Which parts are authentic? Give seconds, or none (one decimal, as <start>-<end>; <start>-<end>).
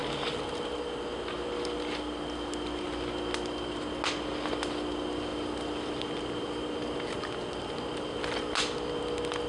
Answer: 0.0-9.5